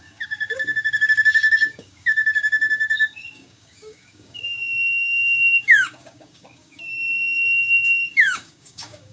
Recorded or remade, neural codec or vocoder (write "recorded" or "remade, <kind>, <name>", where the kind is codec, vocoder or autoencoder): remade, codec, DAC